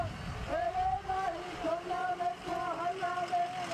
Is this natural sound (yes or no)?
yes